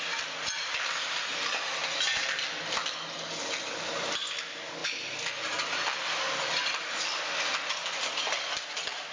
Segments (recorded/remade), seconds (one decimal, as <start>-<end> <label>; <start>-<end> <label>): 0.0-9.1 recorded